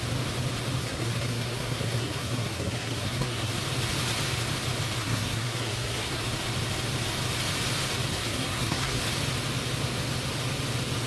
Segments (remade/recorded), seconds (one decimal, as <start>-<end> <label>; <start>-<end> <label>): 0.0-0.8 recorded; 0.8-3.5 remade; 3.5-5.0 recorded; 5.0-6.2 remade; 6.2-8.1 recorded; 8.1-9.0 remade; 9.0-11.1 recorded